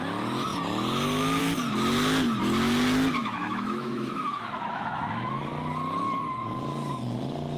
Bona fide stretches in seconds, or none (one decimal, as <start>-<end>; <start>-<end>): 0.0-3.2; 5.4-7.6